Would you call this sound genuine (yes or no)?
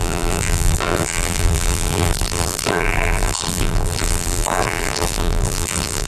no